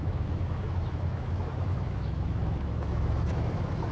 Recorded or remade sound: remade